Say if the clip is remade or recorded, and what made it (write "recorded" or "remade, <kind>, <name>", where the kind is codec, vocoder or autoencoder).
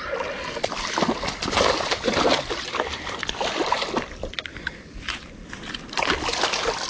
recorded